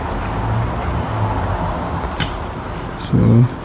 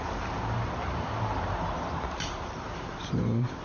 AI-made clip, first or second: second